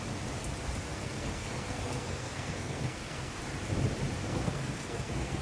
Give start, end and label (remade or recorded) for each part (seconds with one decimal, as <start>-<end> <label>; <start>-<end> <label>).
0.0-0.9 recorded; 0.9-3.4 remade; 3.4-4.2 recorded; 4.2-5.4 remade